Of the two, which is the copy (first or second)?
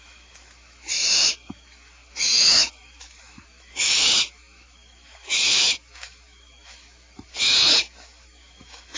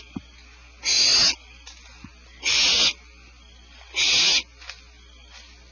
first